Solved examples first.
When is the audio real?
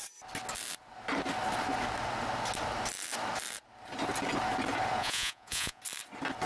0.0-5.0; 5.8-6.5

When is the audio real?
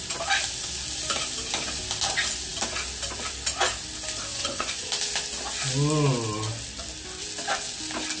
0.0-4.3; 4.9-8.2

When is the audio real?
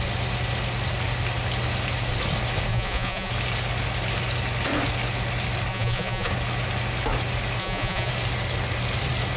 0.0-2.7; 3.3-5.7; 6.3-7.6; 8.1-9.4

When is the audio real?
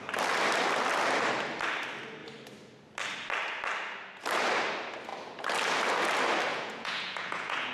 0.0-6.5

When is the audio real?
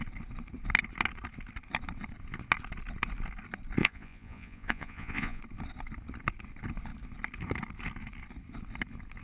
0.0-3.8; 5.4-9.2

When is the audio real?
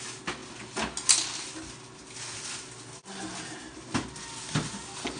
0.0-5.2